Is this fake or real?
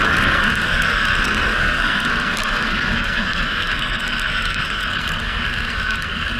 fake